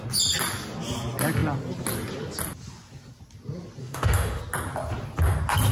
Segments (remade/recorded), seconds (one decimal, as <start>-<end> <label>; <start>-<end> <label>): 0.0-3.8 recorded; 3.8-4.4 remade; 4.4-5.7 recorded